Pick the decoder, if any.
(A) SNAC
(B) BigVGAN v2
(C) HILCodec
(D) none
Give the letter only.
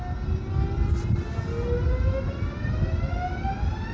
D